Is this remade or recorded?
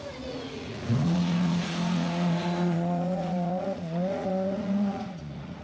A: remade